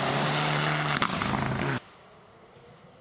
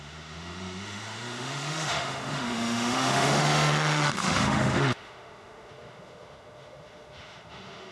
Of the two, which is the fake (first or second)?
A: second